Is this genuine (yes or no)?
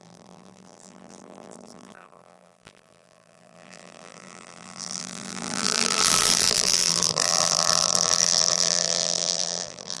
no